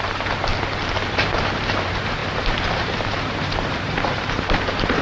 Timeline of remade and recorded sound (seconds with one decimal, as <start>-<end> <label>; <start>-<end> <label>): 0.0-0.5 remade; 0.5-1.1 recorded; 1.1-5.0 remade

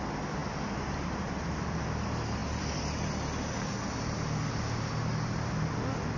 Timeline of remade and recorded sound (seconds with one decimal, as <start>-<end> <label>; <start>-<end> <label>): 0.0-6.2 recorded

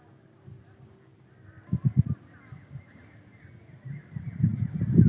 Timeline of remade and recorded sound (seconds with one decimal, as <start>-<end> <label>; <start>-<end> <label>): 0.0-5.1 recorded

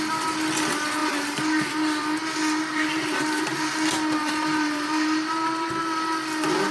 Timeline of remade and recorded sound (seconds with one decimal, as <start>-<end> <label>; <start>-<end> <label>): 0.0-1.0 recorded; 1.0-1.7 remade; 1.7-2.7 recorded; 2.7-3.5 remade; 3.5-4.2 recorded; 4.2-5.8 remade; 5.8-6.7 recorded

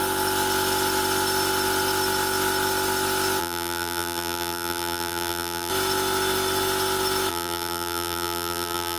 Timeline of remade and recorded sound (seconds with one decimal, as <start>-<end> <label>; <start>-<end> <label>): 0.0-3.4 recorded; 3.4-5.7 remade; 5.7-7.3 recorded; 7.3-9.0 remade

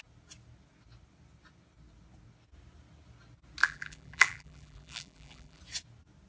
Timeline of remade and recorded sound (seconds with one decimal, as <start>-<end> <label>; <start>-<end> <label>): 0.0-3.6 recorded; 3.6-5.6 remade; 5.6-6.3 recorded